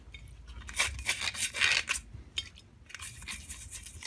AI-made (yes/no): no